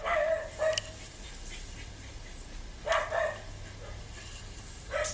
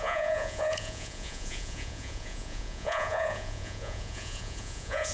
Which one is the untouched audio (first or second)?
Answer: first